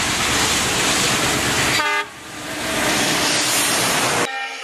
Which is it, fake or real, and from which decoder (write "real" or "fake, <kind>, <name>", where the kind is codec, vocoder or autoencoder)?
real